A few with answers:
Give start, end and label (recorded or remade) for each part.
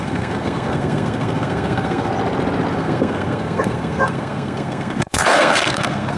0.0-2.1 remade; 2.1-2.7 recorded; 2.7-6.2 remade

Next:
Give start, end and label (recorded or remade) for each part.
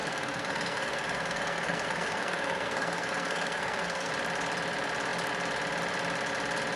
0.0-4.1 remade; 4.1-6.8 recorded